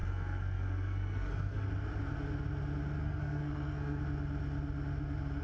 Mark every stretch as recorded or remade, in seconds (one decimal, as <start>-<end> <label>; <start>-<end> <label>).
0.0-1.7 remade; 1.7-3.0 recorded; 3.0-4.0 remade; 4.0-5.4 recorded